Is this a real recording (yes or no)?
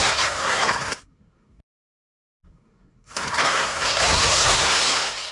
no